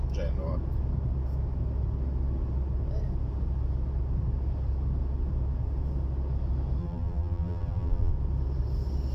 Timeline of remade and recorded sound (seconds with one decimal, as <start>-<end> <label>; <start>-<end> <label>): 0.0-6.8 recorded; 6.8-8.1 remade; 8.1-9.1 recorded